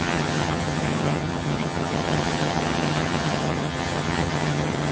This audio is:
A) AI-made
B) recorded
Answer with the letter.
A